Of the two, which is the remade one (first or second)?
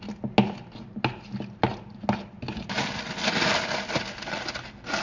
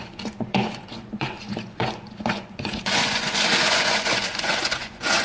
second